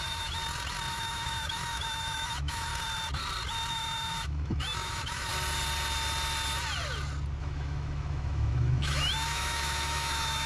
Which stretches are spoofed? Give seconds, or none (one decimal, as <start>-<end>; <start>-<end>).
0.0-0.4; 0.9-2.7; 3.7-5.3; 7.4-10.5